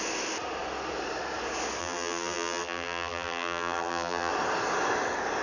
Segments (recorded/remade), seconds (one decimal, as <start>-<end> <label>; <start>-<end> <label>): 0.0-1.8 recorded; 1.8-4.3 remade; 4.3-5.4 recorded